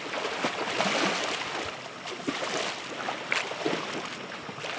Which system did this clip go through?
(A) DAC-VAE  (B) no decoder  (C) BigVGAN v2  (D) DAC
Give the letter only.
B